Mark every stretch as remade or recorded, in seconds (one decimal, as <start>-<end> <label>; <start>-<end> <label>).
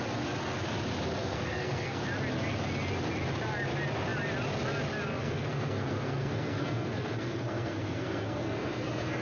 0.0-1.2 recorded; 1.2-2.0 remade; 2.0-5.2 recorded; 5.2-9.2 remade